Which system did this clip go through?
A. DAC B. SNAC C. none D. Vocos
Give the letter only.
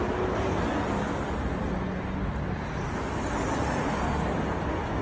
C